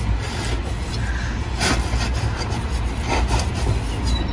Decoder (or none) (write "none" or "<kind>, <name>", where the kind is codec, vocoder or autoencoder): none